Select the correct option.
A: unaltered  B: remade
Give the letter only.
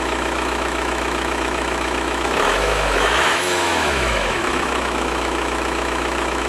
B